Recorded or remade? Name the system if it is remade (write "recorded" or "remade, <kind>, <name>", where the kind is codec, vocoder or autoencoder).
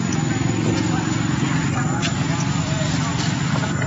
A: recorded